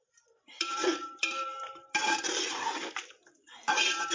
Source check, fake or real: fake